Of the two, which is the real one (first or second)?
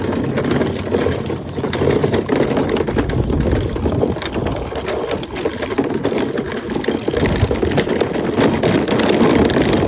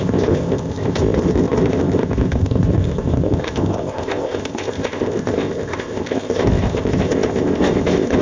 first